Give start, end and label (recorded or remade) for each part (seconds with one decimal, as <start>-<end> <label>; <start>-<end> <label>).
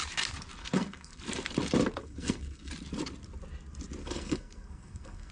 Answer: 0.0-0.6 recorded; 0.6-1.2 remade; 1.2-2.0 recorded; 2.0-2.7 remade; 2.7-4.0 recorded; 4.0-5.3 remade